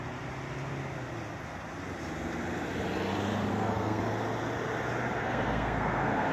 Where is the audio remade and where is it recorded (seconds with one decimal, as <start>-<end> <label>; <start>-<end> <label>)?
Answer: 0.0-3.5 recorded; 3.5-4.0 remade; 4.0-5.2 recorded; 5.2-6.3 remade